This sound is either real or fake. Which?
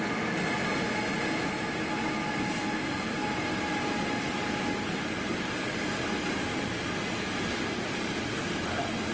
real